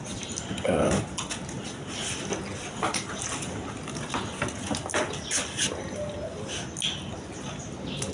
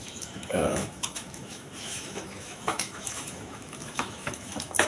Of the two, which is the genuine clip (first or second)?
first